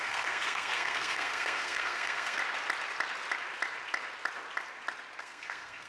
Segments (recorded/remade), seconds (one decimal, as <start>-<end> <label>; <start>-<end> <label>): 0.0-2.4 remade; 2.4-5.2 recorded; 5.2-5.9 remade

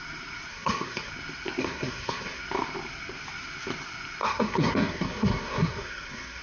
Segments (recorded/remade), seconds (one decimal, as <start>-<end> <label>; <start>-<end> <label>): 0.0-0.5 recorded; 0.5-1.1 remade; 1.1-1.6 recorded; 1.6-2.4 remade; 2.4-4.2 recorded; 4.2-6.4 remade

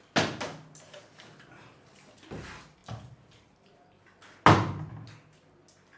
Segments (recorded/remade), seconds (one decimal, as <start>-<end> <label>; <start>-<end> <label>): 0.0-6.0 recorded

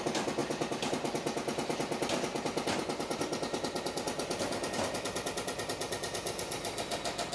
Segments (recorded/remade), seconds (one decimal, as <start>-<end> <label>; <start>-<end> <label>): 0.0-7.3 recorded

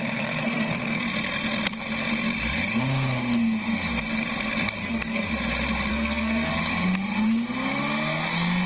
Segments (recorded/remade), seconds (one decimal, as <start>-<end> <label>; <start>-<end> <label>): 0.0-0.4 recorded; 0.4-1.1 remade; 1.1-4.8 recorded; 4.8-5.3 remade; 5.3-5.9 recorded; 5.9-6.5 remade; 6.5-8.7 recorded

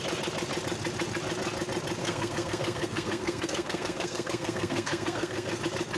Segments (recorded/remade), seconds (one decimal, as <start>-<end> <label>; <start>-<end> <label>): 0.0-2.0 recorded; 2.0-5.6 remade; 5.6-6.0 recorded